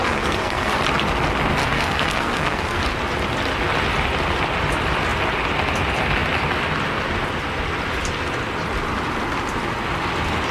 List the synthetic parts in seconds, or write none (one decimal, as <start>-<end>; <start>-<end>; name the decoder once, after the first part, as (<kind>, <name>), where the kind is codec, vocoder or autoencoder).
0.0-0.8 (codec, SNAC); 1.6-2.8